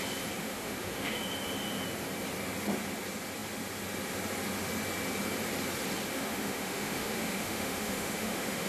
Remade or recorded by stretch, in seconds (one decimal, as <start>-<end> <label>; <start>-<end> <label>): 0.0-0.4 recorded; 0.4-1.2 remade; 1.2-6.1 recorded; 6.1-8.7 remade